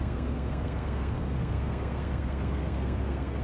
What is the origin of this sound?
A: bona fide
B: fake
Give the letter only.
B